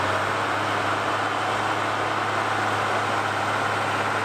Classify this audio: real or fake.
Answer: real